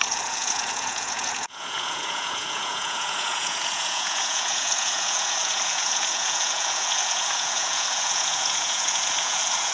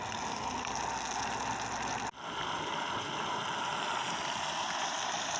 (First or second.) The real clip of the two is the second